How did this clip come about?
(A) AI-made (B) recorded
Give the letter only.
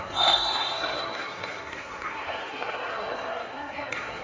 A